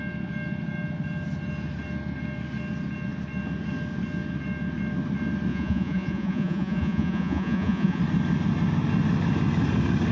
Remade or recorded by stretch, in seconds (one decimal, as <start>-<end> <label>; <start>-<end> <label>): 0.0-5.5 recorded; 5.5-8.0 remade; 8.0-10.1 recorded